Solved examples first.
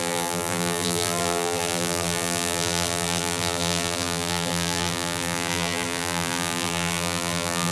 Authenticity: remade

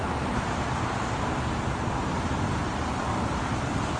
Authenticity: remade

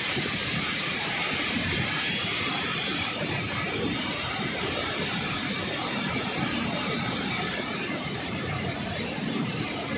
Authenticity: remade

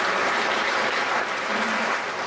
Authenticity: remade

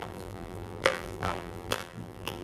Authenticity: remade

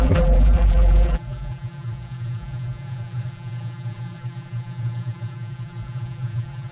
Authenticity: remade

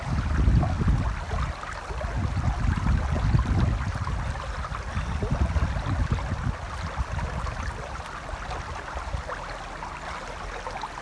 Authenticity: recorded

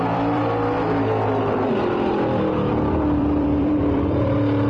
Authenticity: remade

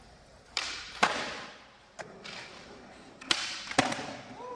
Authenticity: remade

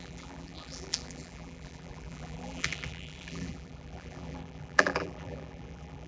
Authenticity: remade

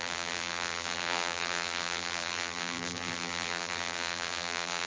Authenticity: remade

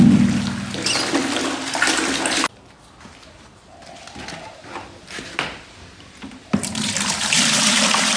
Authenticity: recorded